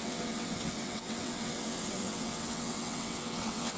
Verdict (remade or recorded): remade